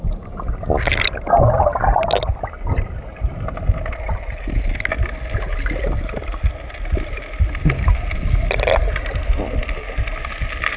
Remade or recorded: recorded